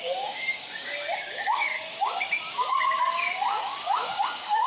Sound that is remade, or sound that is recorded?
remade